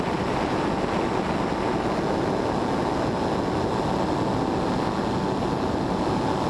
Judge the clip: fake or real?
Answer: real